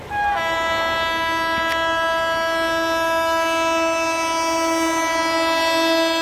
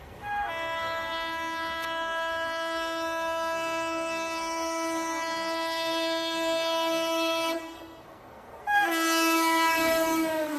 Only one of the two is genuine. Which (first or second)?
first